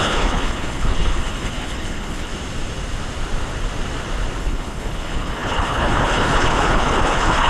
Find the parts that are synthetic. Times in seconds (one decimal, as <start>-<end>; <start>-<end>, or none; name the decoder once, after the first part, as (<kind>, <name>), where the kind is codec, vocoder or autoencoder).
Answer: 0.0-2.3 (codec, HILCodec); 4.4-7.5